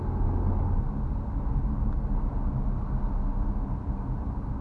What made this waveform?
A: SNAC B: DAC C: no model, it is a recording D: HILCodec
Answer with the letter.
C